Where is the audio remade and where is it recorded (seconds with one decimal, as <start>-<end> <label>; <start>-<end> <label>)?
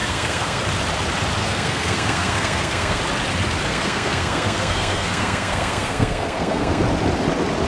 0.0-0.6 remade; 0.6-1.4 recorded; 1.4-3.0 remade; 3.0-3.7 recorded; 3.7-6.8 remade; 6.8-7.7 recorded